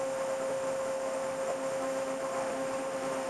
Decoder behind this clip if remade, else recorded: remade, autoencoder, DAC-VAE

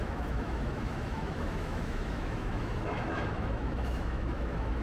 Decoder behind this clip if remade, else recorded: remade, autoencoder, DAC-VAE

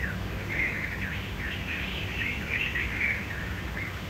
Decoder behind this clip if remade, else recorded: remade, autoencoder, DAC-VAE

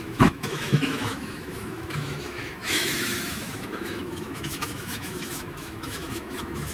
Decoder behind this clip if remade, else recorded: remade, autoencoder, DAC-VAE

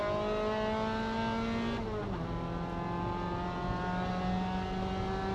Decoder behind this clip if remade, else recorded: recorded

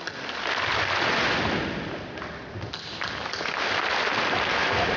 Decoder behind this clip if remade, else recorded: recorded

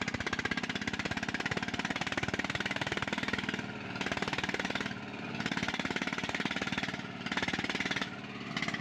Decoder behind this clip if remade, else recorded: recorded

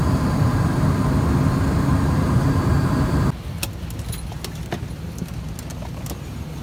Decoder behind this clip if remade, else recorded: recorded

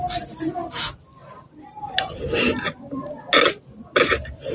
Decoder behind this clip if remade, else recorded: recorded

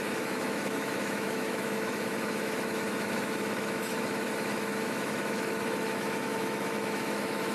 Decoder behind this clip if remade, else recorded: remade, autoencoder, DAC-VAE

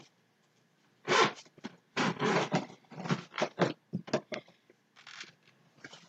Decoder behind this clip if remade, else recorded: recorded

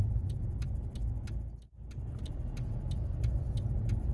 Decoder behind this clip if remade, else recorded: recorded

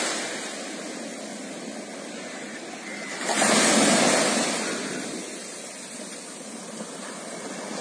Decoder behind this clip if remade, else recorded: recorded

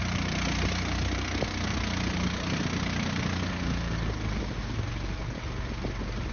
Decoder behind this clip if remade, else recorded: recorded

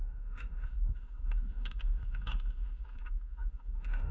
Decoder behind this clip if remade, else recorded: remade, autoencoder, DAC-VAE